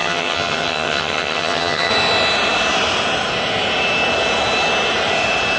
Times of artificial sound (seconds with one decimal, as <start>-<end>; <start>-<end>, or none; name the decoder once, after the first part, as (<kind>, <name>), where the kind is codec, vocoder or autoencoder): 0.0-1.9 (vocoder, HiFi-GAN)